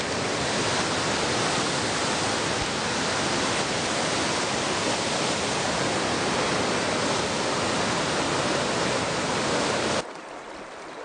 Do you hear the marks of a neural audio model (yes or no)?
no